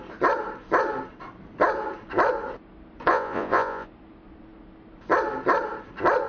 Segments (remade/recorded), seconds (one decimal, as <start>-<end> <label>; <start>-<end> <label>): 0.0-3.1 recorded; 3.1-3.9 remade; 3.9-6.3 recorded